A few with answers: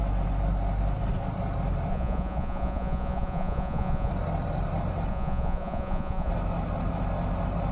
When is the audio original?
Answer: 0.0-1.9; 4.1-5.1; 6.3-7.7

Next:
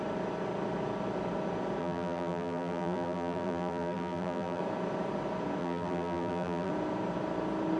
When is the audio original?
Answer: 0.0-1.8; 4.6-5.6; 6.7-7.8

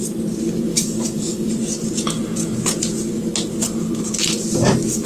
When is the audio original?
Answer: 0.0-0.7; 1.5-5.1

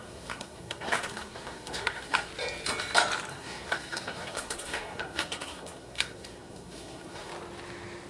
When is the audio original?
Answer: 2.3-3.3; 7.3-8.1